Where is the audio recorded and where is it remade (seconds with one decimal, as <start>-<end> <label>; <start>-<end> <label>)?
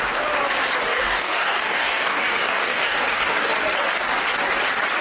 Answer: 0.0-0.9 recorded; 0.9-3.5 remade; 3.5-5.0 recorded